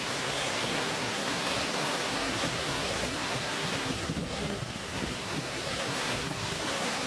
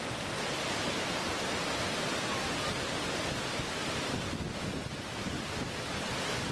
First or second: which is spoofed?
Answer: first